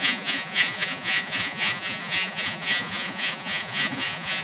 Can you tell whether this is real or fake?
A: fake